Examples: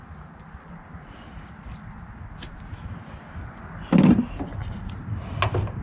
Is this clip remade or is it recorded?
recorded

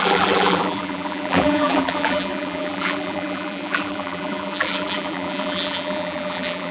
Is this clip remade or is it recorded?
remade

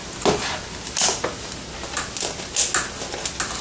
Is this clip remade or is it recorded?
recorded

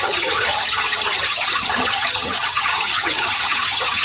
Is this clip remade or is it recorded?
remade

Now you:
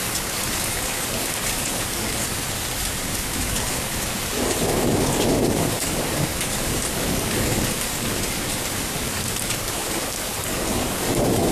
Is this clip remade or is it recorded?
remade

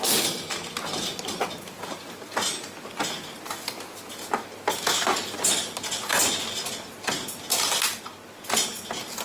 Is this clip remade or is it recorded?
recorded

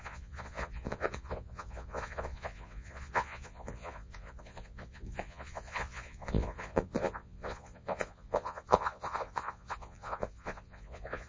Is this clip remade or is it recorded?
remade